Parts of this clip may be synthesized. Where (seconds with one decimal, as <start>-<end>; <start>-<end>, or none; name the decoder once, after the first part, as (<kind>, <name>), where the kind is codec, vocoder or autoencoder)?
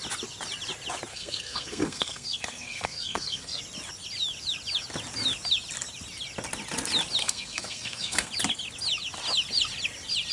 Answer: 1.1-3.6 (codec, SNAC); 7.2-8.3